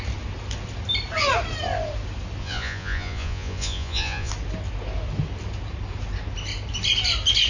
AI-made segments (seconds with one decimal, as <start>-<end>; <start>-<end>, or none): 2.4-4.3